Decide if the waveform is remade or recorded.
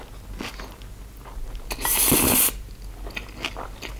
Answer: recorded